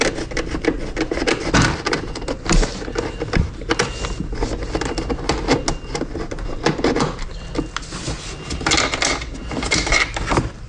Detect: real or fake real